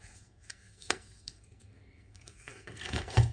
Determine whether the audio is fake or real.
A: fake